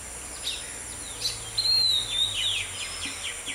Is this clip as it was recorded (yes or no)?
yes